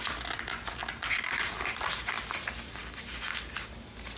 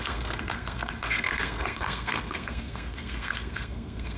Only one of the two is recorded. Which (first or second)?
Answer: first